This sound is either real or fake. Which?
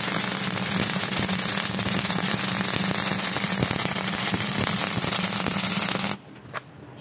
real